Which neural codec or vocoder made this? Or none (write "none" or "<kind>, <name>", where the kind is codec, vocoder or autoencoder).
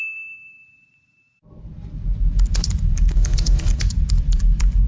vocoder, BigVGAN v2